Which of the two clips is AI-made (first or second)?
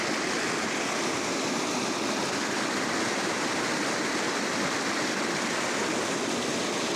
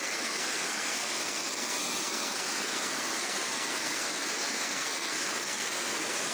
second